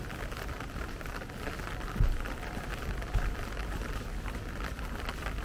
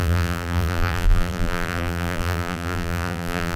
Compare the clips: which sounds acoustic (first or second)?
first